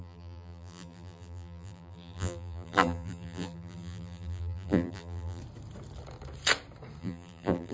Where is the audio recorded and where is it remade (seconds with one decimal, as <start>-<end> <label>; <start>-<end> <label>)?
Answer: 0.0-5.4 remade; 5.4-7.0 recorded; 7.0-7.7 remade